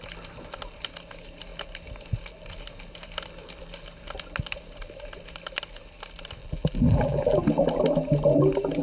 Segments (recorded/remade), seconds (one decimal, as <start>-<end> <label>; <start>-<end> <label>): 0.0-6.4 recorded; 6.4-7.4 remade; 7.4-8.8 recorded